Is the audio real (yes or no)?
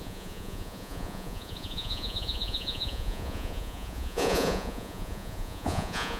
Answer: no